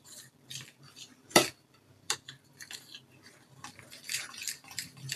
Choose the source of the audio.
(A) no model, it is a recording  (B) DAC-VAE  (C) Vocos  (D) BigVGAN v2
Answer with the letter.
D